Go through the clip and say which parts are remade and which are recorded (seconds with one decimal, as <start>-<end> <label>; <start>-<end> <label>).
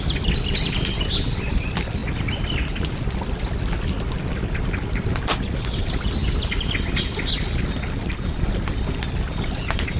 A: 0.0-10.0 remade